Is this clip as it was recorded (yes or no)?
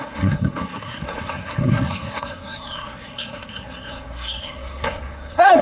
no